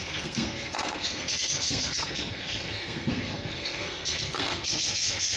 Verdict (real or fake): fake